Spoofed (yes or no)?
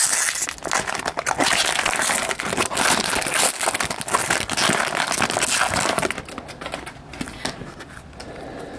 no